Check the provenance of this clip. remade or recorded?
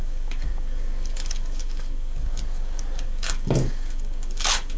remade